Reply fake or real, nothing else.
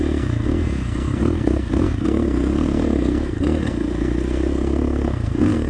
fake